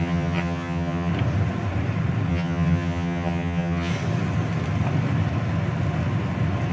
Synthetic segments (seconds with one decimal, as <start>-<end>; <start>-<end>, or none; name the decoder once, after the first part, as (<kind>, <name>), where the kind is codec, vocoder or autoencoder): 0.0-1.1 (vocoder, HiFi-GAN); 2.3-3.9